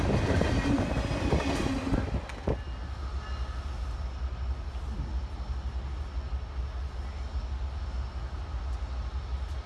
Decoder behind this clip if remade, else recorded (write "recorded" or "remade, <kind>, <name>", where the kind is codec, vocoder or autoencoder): recorded